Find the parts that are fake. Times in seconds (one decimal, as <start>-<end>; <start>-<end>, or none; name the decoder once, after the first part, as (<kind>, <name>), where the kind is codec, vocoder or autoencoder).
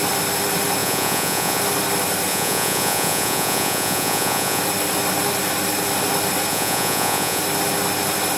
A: 0.8-1.6 (vocoder, Vocos); 2.3-4.6; 6.5-7.4